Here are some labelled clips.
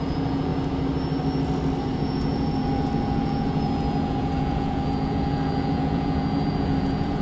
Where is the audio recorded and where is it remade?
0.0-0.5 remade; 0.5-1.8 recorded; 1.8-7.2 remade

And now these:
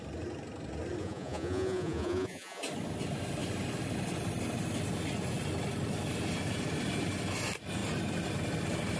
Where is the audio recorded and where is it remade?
0.0-1.0 recorded; 1.0-2.6 remade; 2.6-9.0 recorded

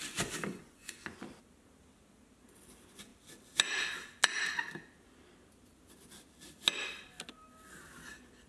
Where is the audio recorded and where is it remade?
0.0-0.5 recorded; 0.5-1.2 remade; 1.2-8.5 recorded

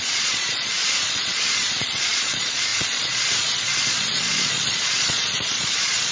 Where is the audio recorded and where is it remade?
0.0-6.1 remade

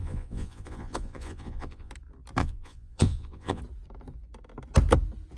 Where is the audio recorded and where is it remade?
0.0-1.9 remade; 1.9-2.4 recorded; 2.4-3.6 remade; 3.6-5.4 recorded

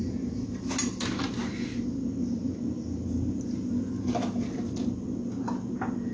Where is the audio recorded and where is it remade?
0.0-6.1 recorded

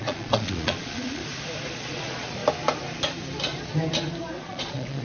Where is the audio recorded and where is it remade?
0.0-1.2 remade; 1.2-1.7 recorded; 1.7-2.4 remade; 2.4-4.4 recorded; 4.4-5.0 remade